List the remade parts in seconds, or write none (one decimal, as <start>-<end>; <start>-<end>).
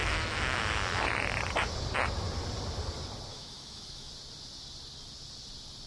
0.0-0.6; 3.3-4.1